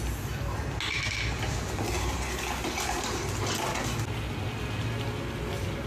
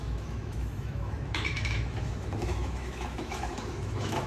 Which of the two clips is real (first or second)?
first